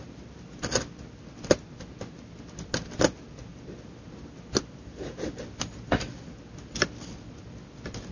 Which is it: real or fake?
real